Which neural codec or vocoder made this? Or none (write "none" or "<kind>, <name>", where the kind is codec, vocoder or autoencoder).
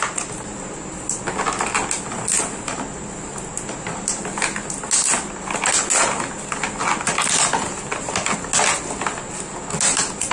none